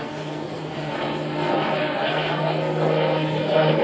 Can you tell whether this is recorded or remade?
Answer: remade